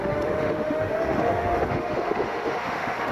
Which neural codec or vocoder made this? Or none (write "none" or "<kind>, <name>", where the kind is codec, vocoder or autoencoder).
autoencoder, DAC-VAE